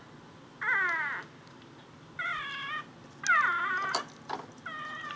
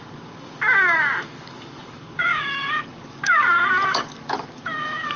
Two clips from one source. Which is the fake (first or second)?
second